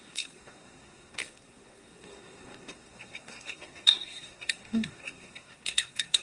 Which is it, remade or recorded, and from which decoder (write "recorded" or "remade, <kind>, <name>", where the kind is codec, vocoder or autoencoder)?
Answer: remade, codec, SNAC